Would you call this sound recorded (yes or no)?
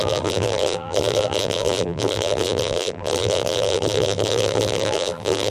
no